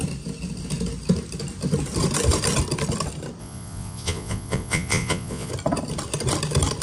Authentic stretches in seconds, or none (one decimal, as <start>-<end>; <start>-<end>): 0.0-3.4; 5.5-6.8